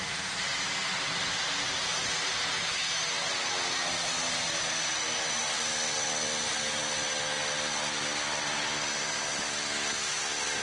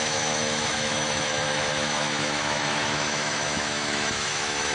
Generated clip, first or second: second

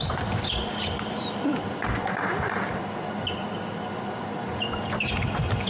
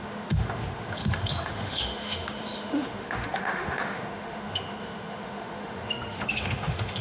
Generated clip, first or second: second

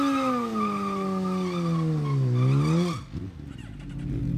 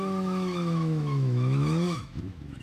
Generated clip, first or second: second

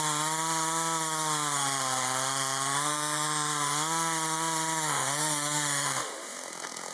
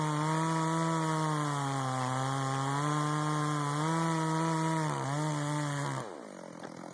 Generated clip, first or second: first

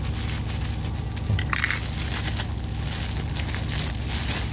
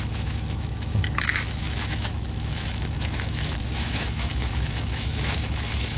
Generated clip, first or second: second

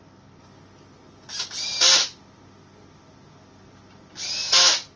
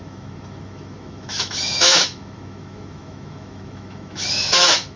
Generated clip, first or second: second